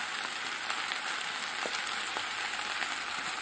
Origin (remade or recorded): remade